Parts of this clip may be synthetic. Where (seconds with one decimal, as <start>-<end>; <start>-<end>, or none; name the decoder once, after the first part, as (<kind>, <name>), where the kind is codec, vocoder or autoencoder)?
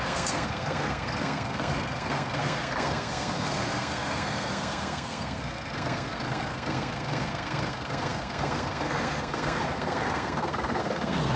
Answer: 0.0-11.4 (codec, SNAC)